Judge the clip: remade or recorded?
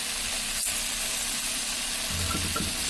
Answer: recorded